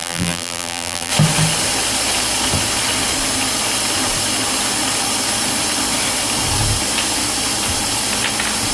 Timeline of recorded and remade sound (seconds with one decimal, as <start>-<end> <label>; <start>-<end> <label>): 0.0-1.1 remade; 1.1-8.7 recorded